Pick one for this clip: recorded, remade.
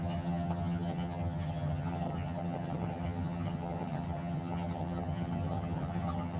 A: remade